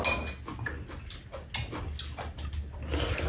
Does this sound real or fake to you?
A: real